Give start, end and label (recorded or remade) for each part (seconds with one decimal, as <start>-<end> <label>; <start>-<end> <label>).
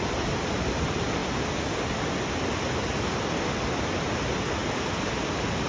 0.0-5.7 recorded